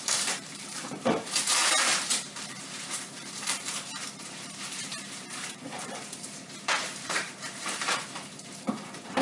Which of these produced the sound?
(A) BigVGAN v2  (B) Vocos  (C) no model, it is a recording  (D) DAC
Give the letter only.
A